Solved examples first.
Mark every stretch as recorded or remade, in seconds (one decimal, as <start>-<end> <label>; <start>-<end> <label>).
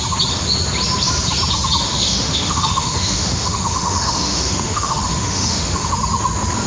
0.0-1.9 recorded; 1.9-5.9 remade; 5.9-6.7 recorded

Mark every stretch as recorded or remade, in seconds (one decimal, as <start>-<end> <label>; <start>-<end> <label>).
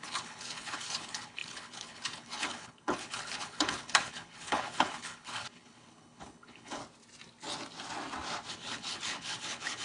0.0-6.8 remade; 6.8-8.5 recorded; 8.5-9.8 remade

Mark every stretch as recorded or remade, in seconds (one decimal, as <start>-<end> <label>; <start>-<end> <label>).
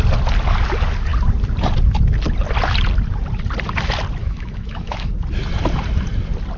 0.0-4.2 recorded; 4.2-5.1 remade; 5.1-6.6 recorded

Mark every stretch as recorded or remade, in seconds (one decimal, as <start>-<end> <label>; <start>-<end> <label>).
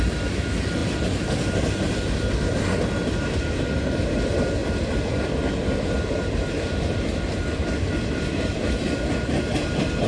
0.0-4.6 recorded; 4.6-9.5 remade; 9.5-10.1 recorded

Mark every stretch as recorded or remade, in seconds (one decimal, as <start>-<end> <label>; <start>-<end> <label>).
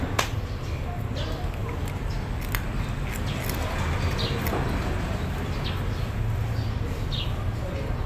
0.0-8.1 recorded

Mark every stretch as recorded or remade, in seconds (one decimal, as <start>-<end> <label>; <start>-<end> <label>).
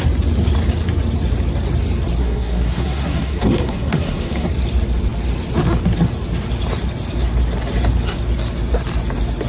0.0-2.2 recorded; 2.2-4.5 remade; 4.5-9.5 recorded